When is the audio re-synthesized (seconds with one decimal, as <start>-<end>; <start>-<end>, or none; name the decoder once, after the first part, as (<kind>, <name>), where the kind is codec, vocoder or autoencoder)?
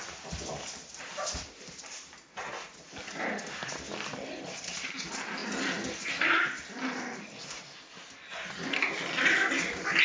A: none